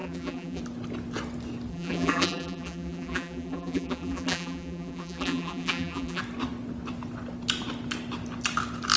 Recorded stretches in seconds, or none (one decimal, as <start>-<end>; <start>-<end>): 0.6-1.7; 6.2-9.0